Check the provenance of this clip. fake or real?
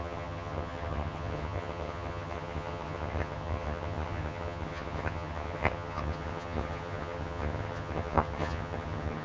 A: fake